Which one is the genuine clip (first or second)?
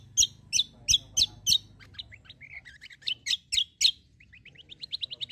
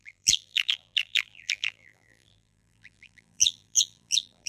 first